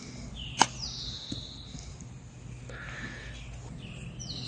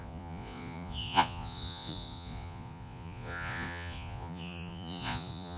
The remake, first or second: second